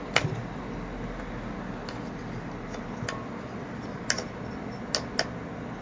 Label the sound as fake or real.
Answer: real